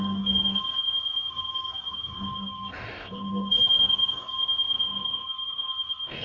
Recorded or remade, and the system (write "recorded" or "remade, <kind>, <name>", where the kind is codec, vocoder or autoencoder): remade, codec, DAC